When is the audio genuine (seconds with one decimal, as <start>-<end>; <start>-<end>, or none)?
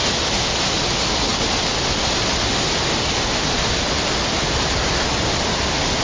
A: 0.0-6.0